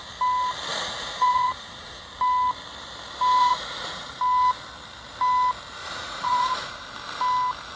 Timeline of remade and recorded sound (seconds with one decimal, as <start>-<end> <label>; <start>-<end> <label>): 0.0-0.7 recorded; 0.7-2.0 remade; 2.0-3.4 recorded; 3.4-4.2 remade; 4.2-5.8 recorded; 5.8-6.7 remade; 6.7-7.8 recorded